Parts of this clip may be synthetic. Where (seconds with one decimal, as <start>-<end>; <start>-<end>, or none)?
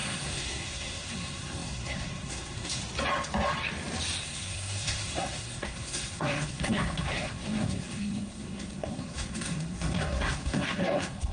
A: 0.0-2.8; 4.2-11.3